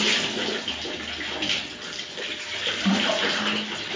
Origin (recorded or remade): recorded